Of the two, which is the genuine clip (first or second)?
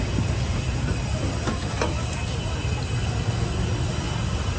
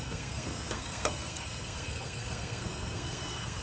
first